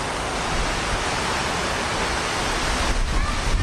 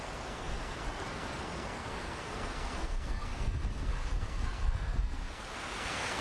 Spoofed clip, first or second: second